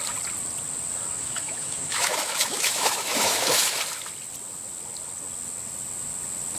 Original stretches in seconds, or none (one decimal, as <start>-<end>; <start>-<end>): 0.0-1.2; 3.8-6.6